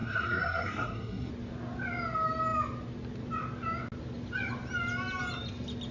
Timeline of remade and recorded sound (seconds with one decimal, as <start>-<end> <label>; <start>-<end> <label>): 0.0-1.3 remade; 1.3-5.9 recorded